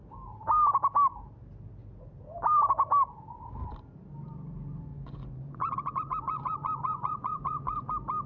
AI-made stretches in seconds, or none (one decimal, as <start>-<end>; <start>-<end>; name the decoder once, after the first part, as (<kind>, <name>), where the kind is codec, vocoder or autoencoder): 4.9-7.9 (vocoder, Vocos)